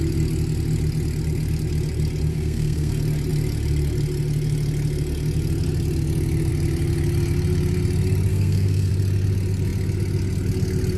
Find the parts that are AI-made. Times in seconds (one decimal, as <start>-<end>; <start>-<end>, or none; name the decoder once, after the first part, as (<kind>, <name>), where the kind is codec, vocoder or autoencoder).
2.3-2.9 (codec, SNAC); 8.3-8.9